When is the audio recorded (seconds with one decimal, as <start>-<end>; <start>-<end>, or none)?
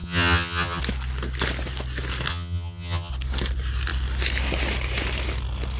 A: 0.8-2.3; 3.1-5.8